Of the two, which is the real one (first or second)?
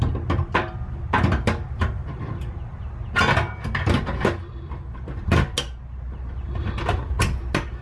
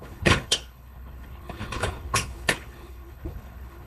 first